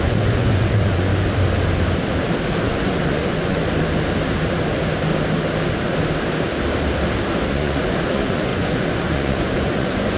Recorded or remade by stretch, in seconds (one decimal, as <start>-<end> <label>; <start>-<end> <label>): 0.0-1.1 remade; 1.1-2.6 recorded; 2.6-3.6 remade; 3.6-7.5 recorded; 7.5-10.2 remade